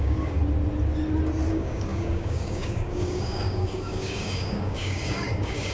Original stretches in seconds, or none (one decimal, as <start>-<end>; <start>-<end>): 0.4-1.5